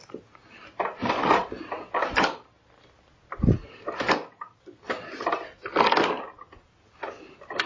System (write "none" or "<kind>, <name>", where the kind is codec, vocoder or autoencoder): none